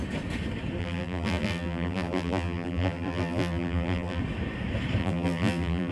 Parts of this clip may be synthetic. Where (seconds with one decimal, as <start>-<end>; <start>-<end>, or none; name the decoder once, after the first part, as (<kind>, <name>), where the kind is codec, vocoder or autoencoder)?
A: 0.8-4.2 (vocoder, BigVGAN v2); 5.0-5.9